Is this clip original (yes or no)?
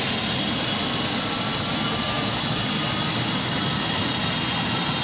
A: yes